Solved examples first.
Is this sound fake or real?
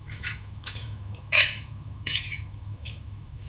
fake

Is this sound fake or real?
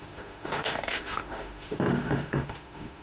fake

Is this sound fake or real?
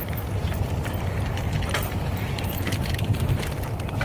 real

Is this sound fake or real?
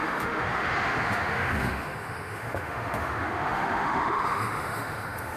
fake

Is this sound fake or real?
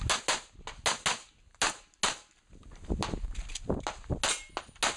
real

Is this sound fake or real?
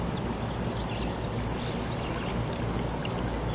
real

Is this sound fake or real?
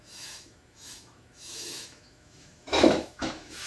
fake